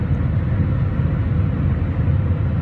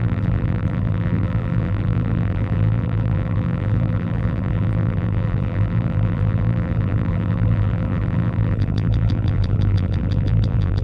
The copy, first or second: second